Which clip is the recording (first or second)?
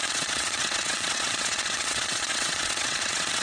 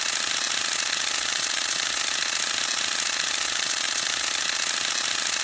second